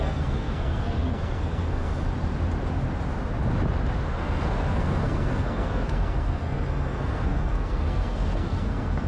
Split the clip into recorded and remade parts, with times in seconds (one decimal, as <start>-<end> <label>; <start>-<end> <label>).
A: 0.0-1.9 remade; 1.9-4.1 recorded; 4.1-9.1 remade